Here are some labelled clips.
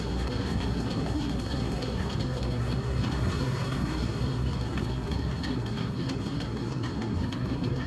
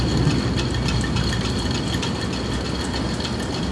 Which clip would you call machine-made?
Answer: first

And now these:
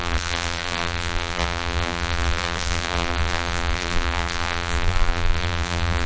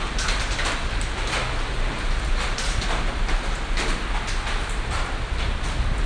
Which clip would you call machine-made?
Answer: first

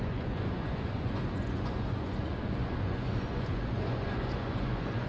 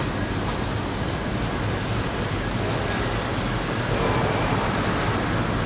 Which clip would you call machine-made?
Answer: first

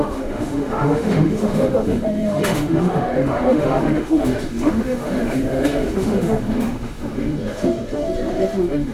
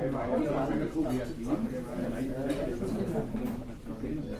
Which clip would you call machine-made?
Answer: first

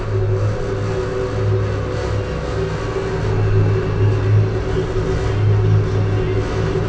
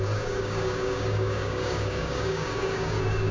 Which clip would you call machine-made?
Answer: second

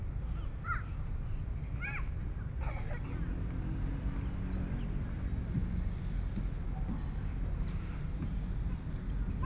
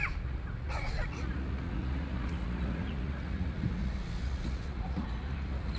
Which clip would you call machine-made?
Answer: second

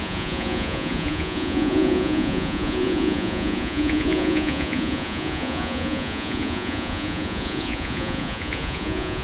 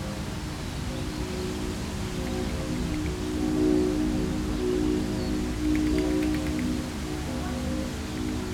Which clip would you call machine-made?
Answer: first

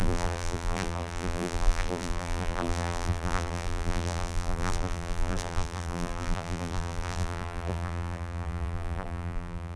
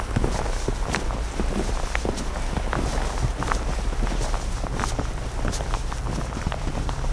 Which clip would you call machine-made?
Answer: first